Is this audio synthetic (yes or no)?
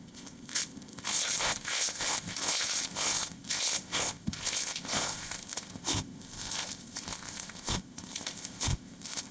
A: yes